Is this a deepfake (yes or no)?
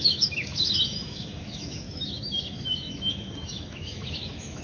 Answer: yes